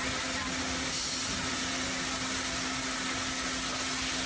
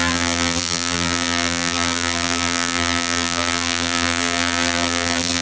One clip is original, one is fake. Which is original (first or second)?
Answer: first